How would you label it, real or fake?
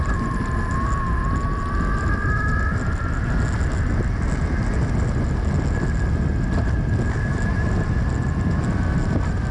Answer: real